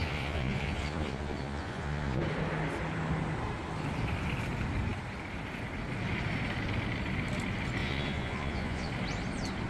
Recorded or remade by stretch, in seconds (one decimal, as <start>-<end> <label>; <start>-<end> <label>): 0.0-2.2 remade; 2.2-7.8 recorded; 7.8-8.9 remade; 8.9-9.7 recorded